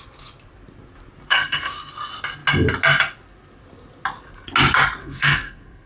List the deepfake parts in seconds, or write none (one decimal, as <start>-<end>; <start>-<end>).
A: 1.3-1.9; 5.0-5.9